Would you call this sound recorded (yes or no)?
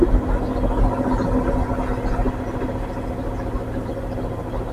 yes